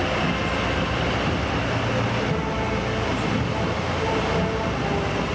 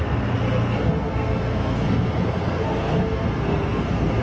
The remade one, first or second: second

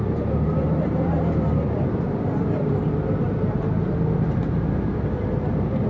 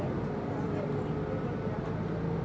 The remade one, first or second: first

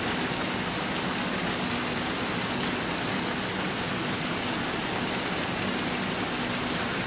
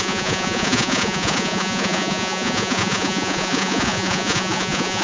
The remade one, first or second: second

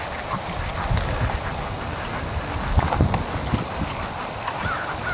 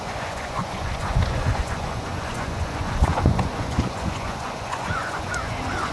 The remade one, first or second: second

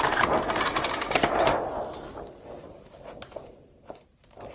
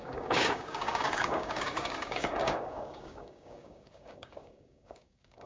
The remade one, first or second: second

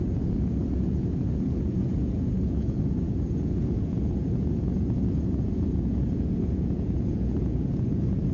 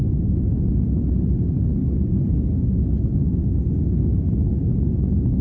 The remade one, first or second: first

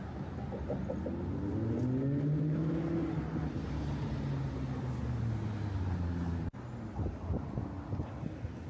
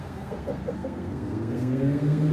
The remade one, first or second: second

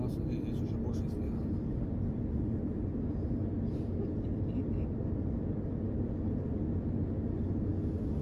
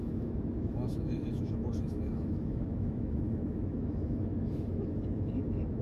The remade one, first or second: second